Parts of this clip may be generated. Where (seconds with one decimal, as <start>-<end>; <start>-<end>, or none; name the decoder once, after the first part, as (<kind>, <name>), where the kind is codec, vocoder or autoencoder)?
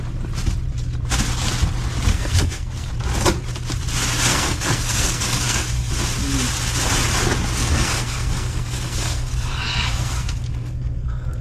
2.1-2.9 (codec, SNAC); 4.3-5.9; 7.6-11.4